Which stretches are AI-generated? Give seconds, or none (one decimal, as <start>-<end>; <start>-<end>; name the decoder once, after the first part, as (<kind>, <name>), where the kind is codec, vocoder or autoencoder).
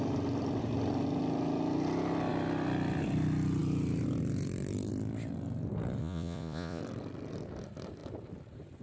6.0-6.8 (vocoder, Vocos)